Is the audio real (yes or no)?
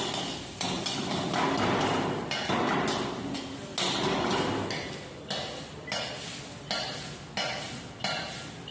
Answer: yes